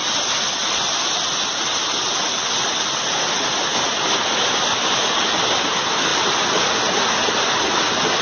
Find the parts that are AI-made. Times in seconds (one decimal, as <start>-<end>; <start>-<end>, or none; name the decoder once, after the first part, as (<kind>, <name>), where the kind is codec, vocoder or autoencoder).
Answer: none